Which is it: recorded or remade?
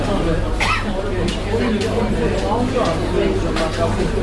recorded